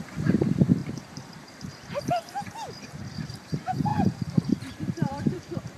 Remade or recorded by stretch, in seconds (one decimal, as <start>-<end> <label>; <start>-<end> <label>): 0.0-5.8 remade